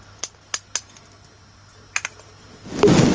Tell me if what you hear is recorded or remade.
recorded